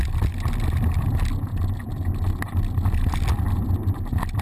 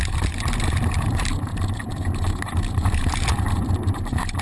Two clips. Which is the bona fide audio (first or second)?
first